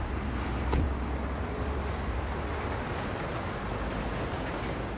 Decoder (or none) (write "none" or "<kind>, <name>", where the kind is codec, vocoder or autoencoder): none